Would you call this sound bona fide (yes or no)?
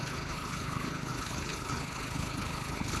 no